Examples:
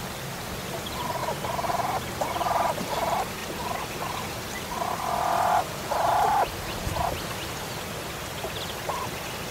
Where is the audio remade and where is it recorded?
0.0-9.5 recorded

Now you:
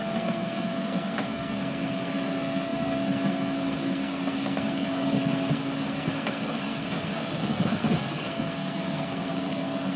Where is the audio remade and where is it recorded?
0.0-10.0 remade